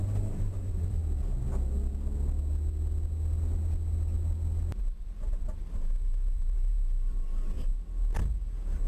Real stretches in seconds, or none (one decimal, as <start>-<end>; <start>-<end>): 1.0-4.8

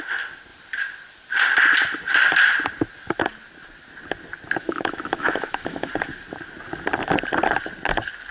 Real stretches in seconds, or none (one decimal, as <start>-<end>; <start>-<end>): 0.0-4.6; 5.9-8.3